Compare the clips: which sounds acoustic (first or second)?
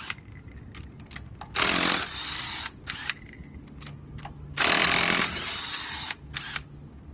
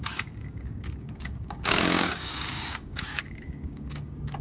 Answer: first